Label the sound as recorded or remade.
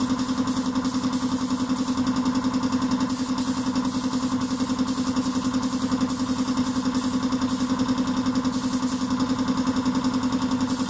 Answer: recorded